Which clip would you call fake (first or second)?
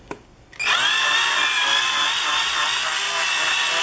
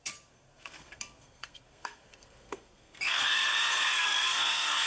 second